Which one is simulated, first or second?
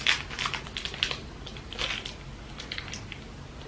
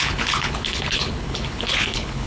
second